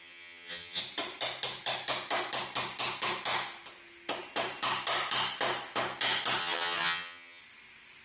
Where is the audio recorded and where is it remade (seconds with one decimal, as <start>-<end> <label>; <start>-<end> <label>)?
0.0-0.8 remade; 0.8-6.4 recorded; 6.4-7.4 remade; 7.4-8.0 recorded